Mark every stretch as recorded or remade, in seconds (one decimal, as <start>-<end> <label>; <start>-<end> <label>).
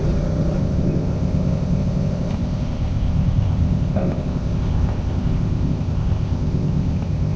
0.0-0.6 recorded; 0.6-7.4 remade